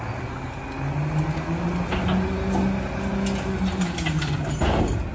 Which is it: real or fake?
real